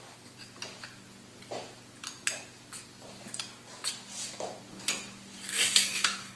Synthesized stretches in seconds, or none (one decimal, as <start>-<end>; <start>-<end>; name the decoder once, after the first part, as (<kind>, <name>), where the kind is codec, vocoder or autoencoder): 5.5-6.4 (codec, DAC)